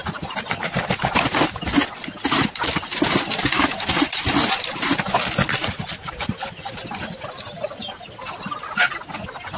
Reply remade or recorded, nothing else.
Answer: recorded